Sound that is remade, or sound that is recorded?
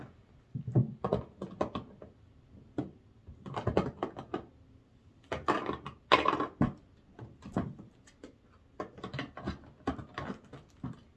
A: recorded